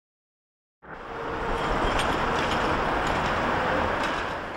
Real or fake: real